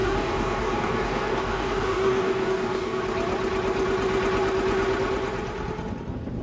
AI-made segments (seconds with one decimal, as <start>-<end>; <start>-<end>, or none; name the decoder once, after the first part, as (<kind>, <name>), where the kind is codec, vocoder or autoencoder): 0.0-3.0 (codec, DAC)